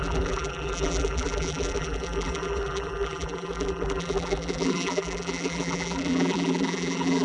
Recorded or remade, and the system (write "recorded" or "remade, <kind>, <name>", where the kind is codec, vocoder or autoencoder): remade, vocoder, BigVGAN v2